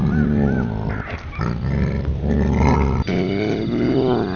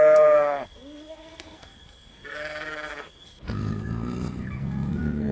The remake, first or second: second